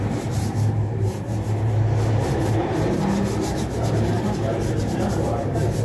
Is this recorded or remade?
remade